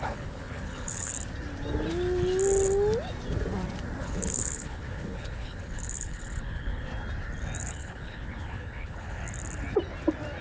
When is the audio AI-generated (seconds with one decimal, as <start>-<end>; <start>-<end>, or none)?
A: 0.0-1.1; 4.0-6.9; 7.7-9.2